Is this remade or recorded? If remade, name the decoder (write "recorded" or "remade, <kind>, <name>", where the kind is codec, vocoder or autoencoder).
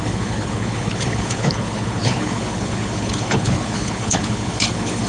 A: remade, codec, HILCodec